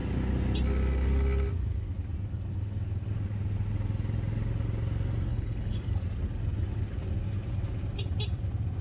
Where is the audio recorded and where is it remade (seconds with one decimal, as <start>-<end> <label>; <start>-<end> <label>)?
0.0-5.3 recorded; 5.3-5.8 remade; 5.8-8.8 recorded